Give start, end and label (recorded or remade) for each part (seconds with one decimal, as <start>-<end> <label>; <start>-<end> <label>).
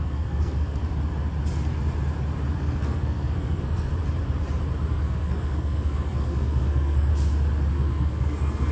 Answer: 0.0-0.8 remade; 0.8-2.6 recorded; 2.6-3.9 remade; 3.9-4.9 recorded; 4.9-7.1 remade; 7.1-7.7 recorded; 7.7-8.7 remade